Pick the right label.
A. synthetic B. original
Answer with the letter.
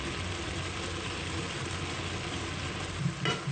B